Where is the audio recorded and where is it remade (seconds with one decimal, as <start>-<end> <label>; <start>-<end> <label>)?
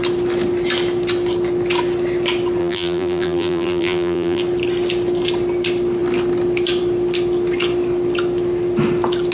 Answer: 0.0-2.6 recorded; 2.6-4.4 remade; 4.4-9.3 recorded